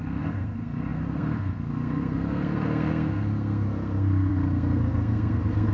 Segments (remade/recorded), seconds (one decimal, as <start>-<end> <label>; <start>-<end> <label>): 0.0-5.7 remade